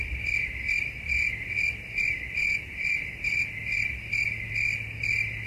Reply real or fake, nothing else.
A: real